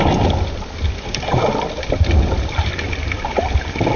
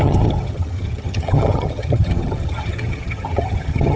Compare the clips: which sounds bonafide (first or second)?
first